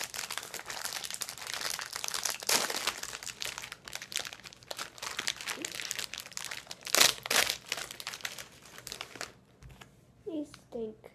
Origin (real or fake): real